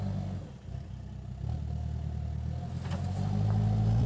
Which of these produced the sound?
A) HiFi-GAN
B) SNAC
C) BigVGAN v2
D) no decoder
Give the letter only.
C